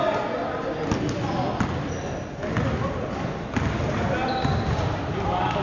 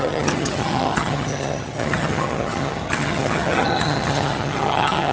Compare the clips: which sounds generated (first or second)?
second